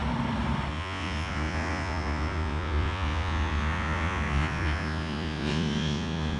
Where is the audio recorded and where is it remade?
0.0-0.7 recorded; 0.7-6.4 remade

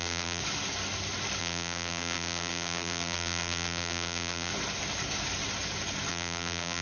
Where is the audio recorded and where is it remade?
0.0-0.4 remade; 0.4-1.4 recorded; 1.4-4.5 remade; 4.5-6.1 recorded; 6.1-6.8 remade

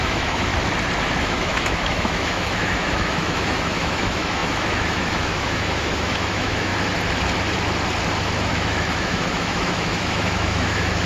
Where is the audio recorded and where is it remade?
0.0-0.5 remade; 0.5-1.2 recorded; 1.2-6.7 remade; 6.7-8.5 recorded; 8.5-11.1 remade

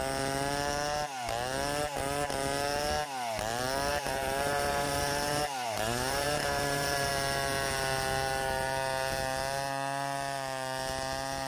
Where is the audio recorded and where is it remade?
0.0-3.9 recorded; 3.9-7.1 remade; 7.1-11.5 recorded

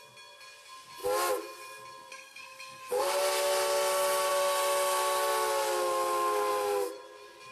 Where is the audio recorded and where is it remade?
0.0-2.1 recorded; 2.1-3.2 remade; 3.2-7.5 recorded

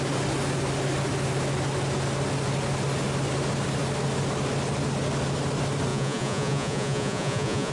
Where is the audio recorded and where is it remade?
0.0-5.9 recorded; 5.9-7.7 remade

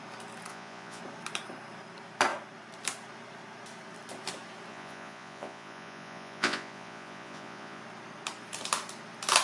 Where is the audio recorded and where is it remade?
0.0-0.5 recorded; 0.5-1.0 remade; 1.0-4.7 recorded; 4.7-7.8 remade; 7.8-9.4 recorded